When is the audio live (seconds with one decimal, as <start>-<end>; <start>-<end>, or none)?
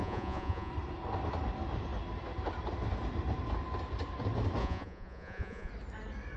0.7-4.6; 5.7-6.4